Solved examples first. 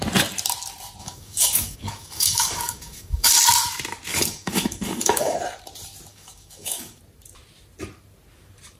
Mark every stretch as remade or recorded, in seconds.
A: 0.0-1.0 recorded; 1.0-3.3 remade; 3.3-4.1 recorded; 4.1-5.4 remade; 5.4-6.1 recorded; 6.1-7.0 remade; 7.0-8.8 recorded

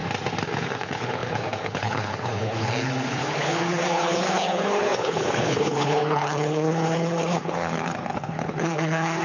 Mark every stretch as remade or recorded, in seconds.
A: 0.0-0.6 recorded; 0.6-9.2 remade

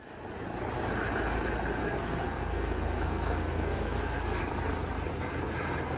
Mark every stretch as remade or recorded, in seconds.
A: 0.0-1.8 recorded; 1.8-4.4 remade; 4.4-6.0 recorded

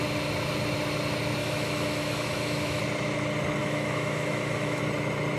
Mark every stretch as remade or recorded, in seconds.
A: 0.0-1.4 recorded; 1.4-2.8 remade; 2.8-3.6 recorded; 3.6-4.8 remade; 4.8-5.4 recorded

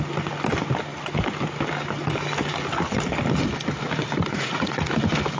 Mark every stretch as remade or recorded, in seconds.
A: 0.0-4.3 recorded; 4.3-4.9 remade; 4.9-5.4 recorded